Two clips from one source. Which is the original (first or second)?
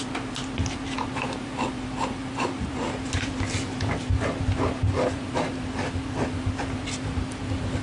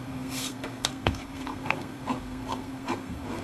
first